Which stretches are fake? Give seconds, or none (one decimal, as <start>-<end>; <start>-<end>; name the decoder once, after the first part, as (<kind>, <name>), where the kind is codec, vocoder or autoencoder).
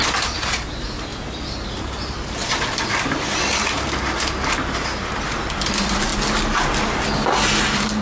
0.0-1.1 (vocoder, BigVGAN v2); 1.7-2.4; 3.6-6.1; 7.6-8.0